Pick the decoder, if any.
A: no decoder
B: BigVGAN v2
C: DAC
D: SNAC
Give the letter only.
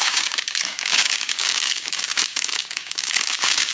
C